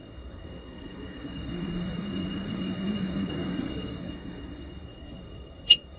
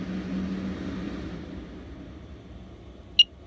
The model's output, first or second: first